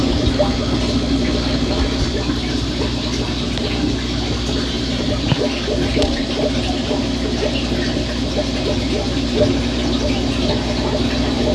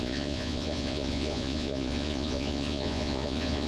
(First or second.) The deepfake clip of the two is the second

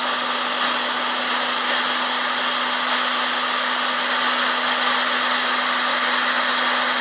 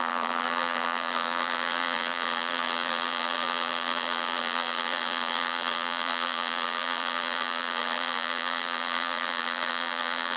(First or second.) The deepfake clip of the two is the second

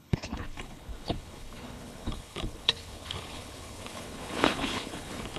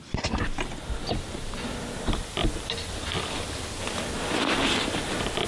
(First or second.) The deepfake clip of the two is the first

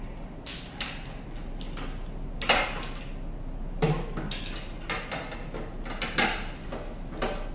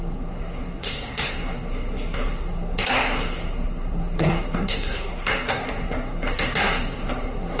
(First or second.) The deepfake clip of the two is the second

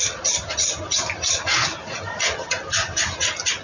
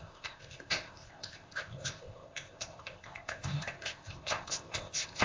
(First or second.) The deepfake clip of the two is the second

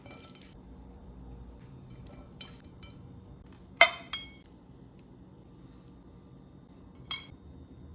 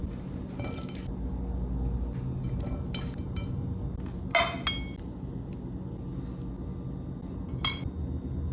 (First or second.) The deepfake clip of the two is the first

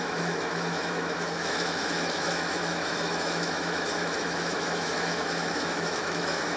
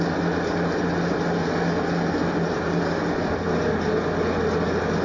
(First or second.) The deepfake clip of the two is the first